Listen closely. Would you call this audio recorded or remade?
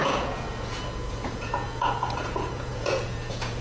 remade